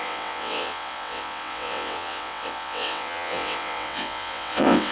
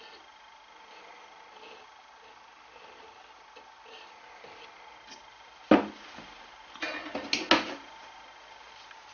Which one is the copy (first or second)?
first